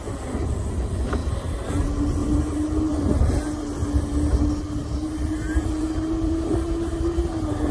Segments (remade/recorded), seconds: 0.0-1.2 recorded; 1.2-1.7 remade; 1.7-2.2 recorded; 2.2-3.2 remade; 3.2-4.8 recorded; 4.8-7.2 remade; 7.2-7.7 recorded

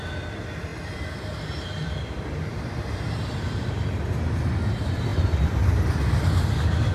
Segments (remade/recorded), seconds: 0.0-0.7 recorded; 0.7-3.0 remade; 3.0-5.1 recorded; 5.1-5.6 remade; 5.6-6.9 recorded